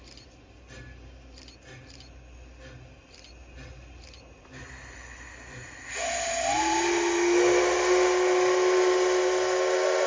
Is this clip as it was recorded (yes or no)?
yes